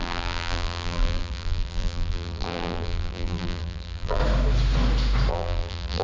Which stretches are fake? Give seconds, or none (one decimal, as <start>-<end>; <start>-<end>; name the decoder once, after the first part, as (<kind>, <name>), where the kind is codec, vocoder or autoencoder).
0.0-4.2 (vocoder, BigVGAN v2); 5.3-6.0